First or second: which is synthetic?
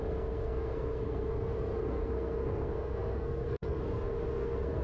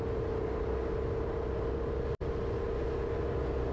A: first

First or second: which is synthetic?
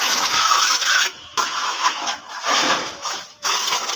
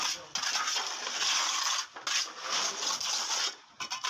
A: first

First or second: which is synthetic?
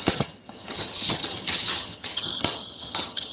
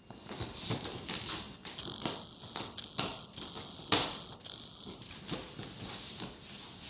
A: first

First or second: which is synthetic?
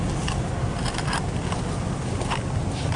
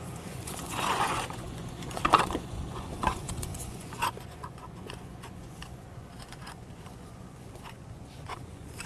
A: second